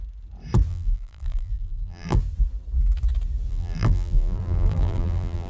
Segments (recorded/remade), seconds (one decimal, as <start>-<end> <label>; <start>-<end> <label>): 0.0-0.7 recorded; 0.7-2.2 remade; 2.2-3.5 recorded; 3.5-5.5 remade

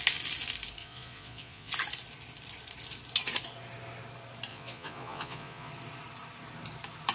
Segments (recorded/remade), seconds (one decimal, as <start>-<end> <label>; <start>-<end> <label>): 0.0-0.8 recorded; 0.8-1.7 remade; 1.7-4.5 recorded; 4.5-5.7 remade; 5.7-7.1 recorded

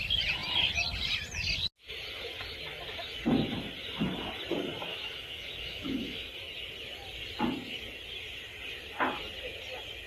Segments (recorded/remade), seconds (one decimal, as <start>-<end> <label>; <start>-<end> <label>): 0.0-4.9 recorded; 4.9-6.3 remade; 6.3-10.1 recorded

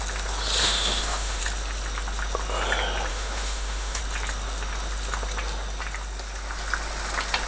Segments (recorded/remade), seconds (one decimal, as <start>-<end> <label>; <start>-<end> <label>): 0.0-0.6 recorded; 0.6-1.4 remade; 1.4-3.1 recorded; 3.1-4.0 remade; 4.0-7.5 recorded

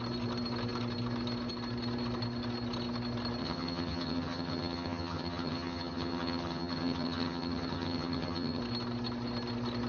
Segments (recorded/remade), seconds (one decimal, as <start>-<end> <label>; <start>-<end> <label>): 0.0-3.4 recorded; 3.4-8.6 remade; 8.6-9.9 recorded

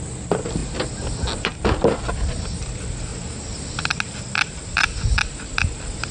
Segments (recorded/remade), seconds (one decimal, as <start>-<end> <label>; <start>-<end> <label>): 0.0-0.6 remade; 0.6-2.4 recorded; 2.4-3.1 remade; 3.1-4.2 recorded; 4.2-6.1 remade

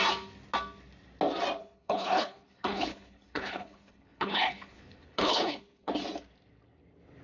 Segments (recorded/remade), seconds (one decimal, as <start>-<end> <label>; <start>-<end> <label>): 0.0-1.6 recorded; 1.6-5.9 remade; 5.9-7.2 recorded